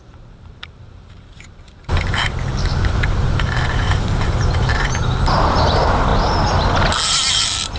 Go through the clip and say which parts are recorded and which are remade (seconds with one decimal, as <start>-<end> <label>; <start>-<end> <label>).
0.0-6.1 remade; 6.1-7.1 recorded; 7.1-7.8 remade